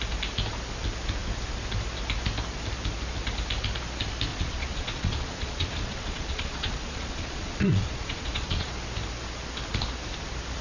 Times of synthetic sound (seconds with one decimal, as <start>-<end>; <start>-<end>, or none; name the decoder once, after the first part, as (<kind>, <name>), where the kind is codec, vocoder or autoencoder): 4.3-8.7 (vocoder, Vocos)